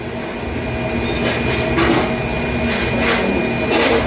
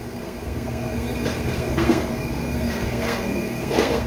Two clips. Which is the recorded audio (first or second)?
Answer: first